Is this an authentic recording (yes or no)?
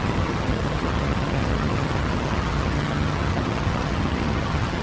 no